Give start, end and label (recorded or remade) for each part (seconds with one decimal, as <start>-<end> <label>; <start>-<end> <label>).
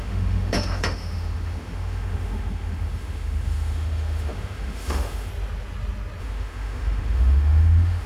0.0-5.3 remade; 5.3-6.2 recorded; 6.2-8.1 remade